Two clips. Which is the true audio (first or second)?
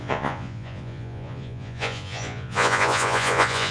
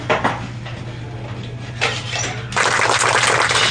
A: second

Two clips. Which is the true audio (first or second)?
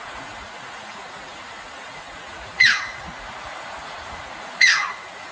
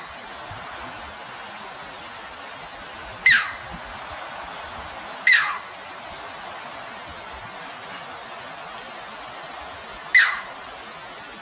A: second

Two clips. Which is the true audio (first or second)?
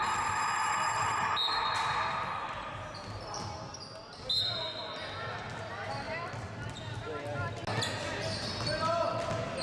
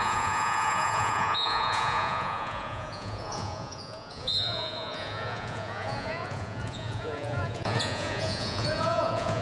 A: first